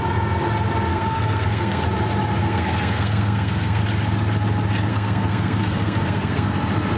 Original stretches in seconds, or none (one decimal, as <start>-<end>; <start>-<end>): 0.0-0.9; 1.8-2.4; 3.8-4.9; 6.5-7.0